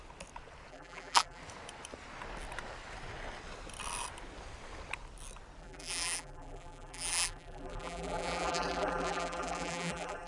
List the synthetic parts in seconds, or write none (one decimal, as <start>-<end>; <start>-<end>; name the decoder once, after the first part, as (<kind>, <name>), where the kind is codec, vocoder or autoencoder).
0.7-1.4 (vocoder, BigVGAN v2); 5.6-10.3

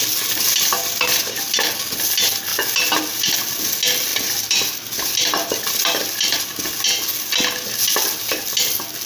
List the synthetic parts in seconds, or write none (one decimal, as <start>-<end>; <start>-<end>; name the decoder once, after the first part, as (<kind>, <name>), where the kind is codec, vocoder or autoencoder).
4.1-6.4 (vocoder, BigVGAN v2)

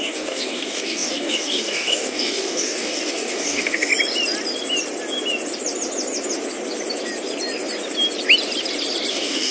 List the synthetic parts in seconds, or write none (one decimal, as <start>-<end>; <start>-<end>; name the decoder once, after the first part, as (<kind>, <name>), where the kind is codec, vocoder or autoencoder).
0.0-3.9 (codec, DAC); 9.1-9.5

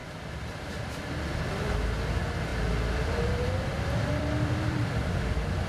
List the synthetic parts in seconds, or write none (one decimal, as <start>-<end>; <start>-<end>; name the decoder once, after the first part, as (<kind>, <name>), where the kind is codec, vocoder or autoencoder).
0.0-1.9 (vocoder, BigVGAN v2); 2.5-5.7

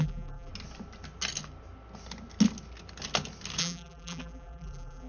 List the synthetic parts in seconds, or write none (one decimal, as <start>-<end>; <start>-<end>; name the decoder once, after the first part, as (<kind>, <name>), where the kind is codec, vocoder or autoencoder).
0.0-0.5 (vocoder, BigVGAN v2); 3.6-5.1